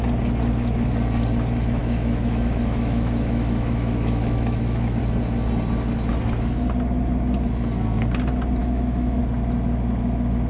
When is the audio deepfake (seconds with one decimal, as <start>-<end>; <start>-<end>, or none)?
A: 1.8-5.0; 8.6-9.2